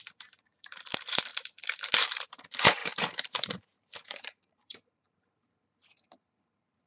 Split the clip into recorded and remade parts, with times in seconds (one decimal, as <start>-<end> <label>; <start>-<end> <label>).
0.0-1.3 remade; 1.3-1.8 recorded; 1.8-6.9 remade

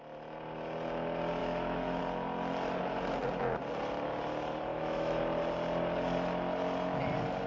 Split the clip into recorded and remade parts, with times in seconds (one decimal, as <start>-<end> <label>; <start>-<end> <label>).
0.0-1.4 recorded; 1.4-2.0 remade; 2.0-4.7 recorded; 4.7-5.2 remade; 5.2-7.5 recorded

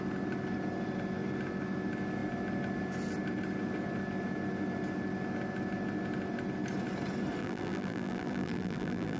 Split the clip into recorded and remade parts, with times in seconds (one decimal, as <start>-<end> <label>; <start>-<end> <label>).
0.0-7.4 recorded; 7.4-9.2 remade